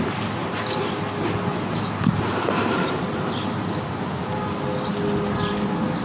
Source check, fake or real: real